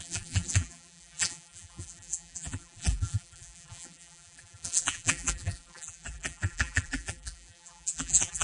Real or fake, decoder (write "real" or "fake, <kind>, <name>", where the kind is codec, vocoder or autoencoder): fake, vocoder, BigVGAN v2